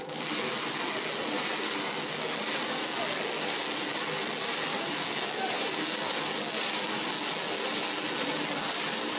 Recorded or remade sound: recorded